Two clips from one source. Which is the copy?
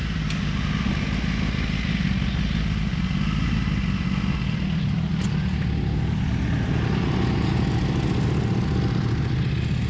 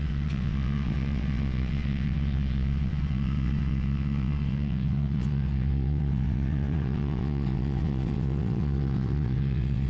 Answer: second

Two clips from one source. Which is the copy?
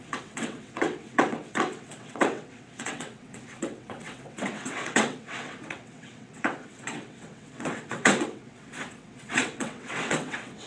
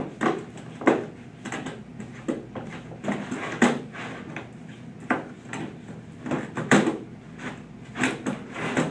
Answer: first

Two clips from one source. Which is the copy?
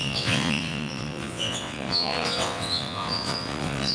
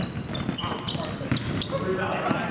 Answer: first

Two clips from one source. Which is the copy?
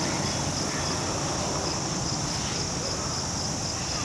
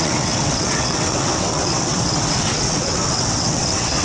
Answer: second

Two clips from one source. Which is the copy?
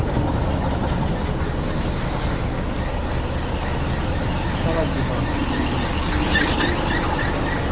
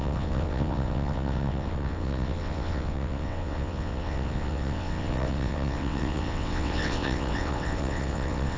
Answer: second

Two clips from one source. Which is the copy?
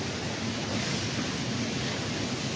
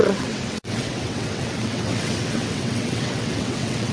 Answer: second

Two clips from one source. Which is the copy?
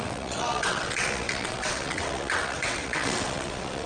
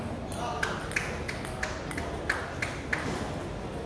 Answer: first